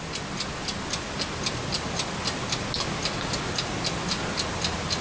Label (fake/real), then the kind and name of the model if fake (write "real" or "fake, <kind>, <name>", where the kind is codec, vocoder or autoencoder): real